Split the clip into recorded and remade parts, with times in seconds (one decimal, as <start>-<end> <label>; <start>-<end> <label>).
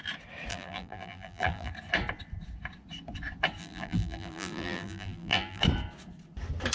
0.0-0.5 recorded; 0.5-1.7 remade; 1.7-3.6 recorded; 3.6-5.6 remade; 5.6-6.7 recorded